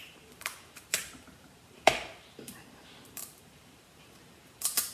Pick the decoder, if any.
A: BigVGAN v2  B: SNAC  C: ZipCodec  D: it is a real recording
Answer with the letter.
A